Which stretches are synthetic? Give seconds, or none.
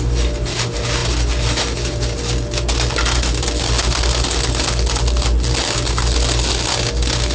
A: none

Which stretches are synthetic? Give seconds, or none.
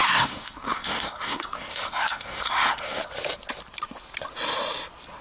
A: 0.0-3.1 (codec, SNAC)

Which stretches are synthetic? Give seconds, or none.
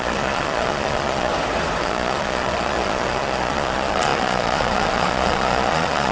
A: 0.0-1.3 (vocoder, Vocos); 1.8-6.1